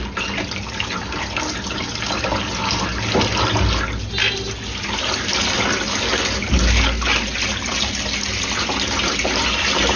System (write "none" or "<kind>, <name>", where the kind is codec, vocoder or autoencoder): none